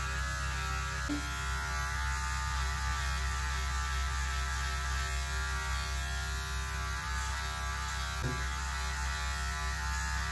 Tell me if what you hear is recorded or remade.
recorded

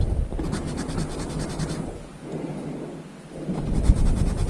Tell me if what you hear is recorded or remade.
recorded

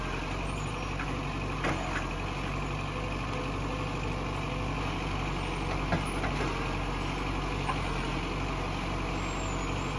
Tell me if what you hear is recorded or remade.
recorded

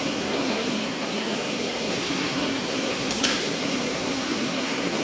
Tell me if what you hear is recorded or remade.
remade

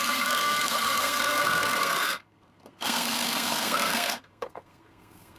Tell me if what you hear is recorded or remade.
remade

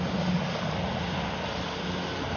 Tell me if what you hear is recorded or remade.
recorded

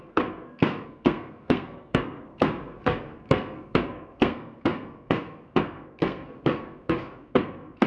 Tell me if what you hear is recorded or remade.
remade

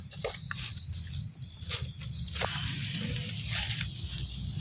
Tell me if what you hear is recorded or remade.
recorded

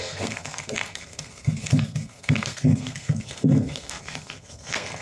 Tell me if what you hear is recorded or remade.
remade